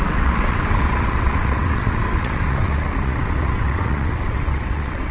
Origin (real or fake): fake